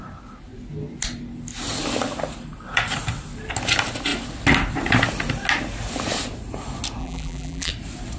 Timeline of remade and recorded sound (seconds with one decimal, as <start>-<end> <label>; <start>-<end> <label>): 0.0-7.0 recorded; 7.0-7.7 remade; 7.7-8.2 recorded

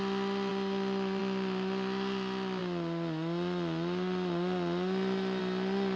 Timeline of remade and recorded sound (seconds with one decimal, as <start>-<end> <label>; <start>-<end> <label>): 0.0-6.0 recorded

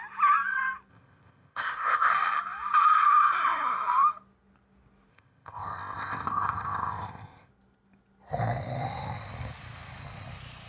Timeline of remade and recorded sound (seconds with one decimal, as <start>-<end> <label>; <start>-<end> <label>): 0.0-0.9 recorded; 0.9-2.1 remade; 2.1-5.1 recorded; 5.1-7.5 remade; 7.5-10.7 recorded

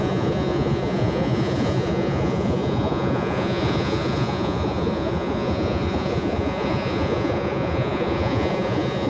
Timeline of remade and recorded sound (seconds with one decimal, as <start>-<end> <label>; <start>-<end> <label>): 0.0-9.1 remade

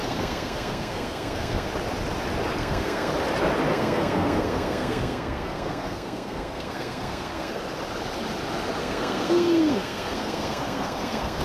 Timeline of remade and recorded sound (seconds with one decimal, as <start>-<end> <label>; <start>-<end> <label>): 0.0-1.7 remade; 1.7-2.6 recorded; 2.6-3.1 remade; 3.1-3.7 recorded; 3.7-7.6 remade; 7.6-8.8 recorded; 8.8-11.4 remade